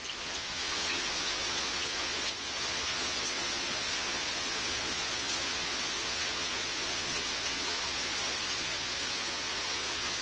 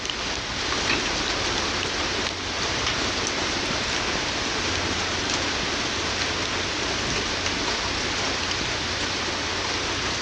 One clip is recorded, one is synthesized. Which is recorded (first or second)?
second